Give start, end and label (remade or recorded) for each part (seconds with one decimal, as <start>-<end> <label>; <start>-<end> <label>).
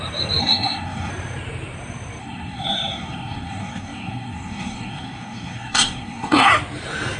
0.0-0.4 recorded; 0.4-1.1 remade; 1.1-2.2 recorded; 2.2-6.5 remade; 6.5-7.2 recorded